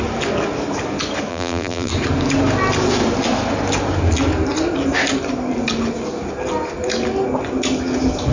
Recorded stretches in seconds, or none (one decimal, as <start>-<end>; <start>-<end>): 0.0-1.3; 1.9-8.3